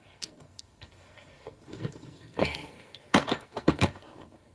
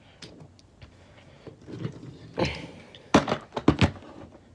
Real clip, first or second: second